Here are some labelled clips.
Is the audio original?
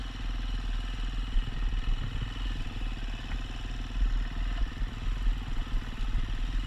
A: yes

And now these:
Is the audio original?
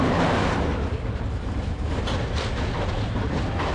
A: yes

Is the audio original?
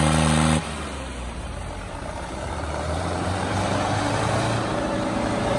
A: no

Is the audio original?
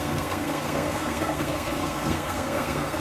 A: no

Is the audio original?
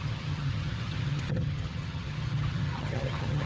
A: no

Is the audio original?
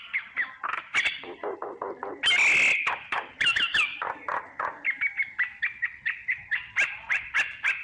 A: yes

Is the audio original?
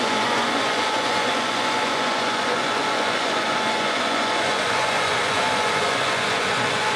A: no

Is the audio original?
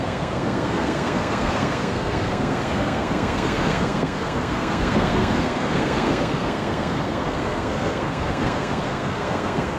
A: no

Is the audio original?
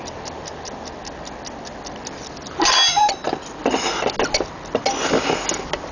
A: yes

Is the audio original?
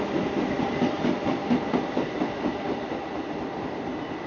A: yes